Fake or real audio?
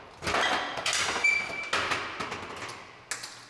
real